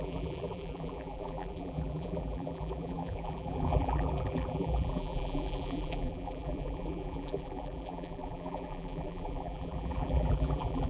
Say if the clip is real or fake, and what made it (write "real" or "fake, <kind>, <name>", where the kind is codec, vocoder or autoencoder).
fake, vocoder, BigVGAN v2